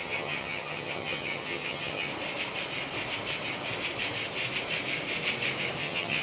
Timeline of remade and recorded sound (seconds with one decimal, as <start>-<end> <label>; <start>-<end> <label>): 0.0-2.1 remade; 2.1-5.8 recorded; 5.8-6.2 remade